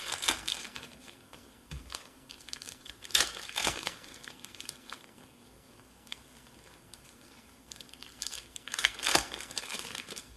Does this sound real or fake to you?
fake